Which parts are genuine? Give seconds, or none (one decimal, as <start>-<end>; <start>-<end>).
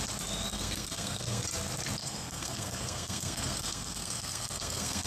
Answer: 0.0-0.5; 1.4-2.0